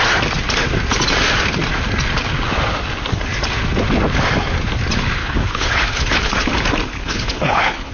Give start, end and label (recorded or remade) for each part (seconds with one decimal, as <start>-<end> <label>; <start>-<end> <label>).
0.0-5.2 recorded; 5.2-6.4 remade; 6.4-7.0 recorded; 7.0-7.9 remade